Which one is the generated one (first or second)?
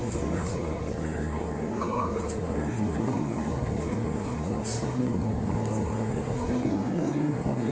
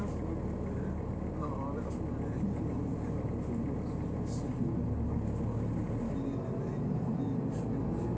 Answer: first